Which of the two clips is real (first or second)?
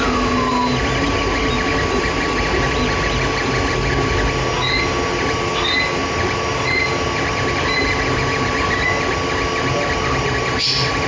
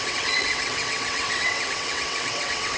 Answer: first